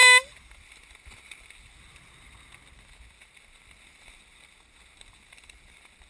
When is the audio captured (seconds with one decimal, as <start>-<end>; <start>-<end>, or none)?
0.0-6.1